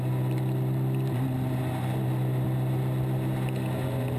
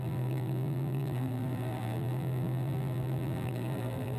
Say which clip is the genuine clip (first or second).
first